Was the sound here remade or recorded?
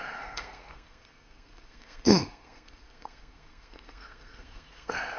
remade